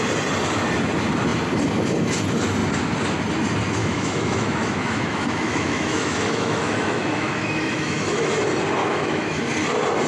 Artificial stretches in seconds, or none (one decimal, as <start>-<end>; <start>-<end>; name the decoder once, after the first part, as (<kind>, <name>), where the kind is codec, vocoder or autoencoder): 3.8-8.3 (autoencoder, DAC-VAE); 8.8-9.4